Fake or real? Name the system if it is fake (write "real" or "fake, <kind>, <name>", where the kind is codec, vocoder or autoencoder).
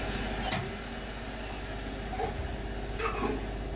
real